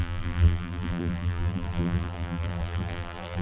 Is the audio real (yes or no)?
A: no